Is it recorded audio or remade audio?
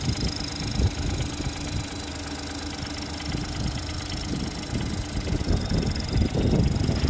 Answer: recorded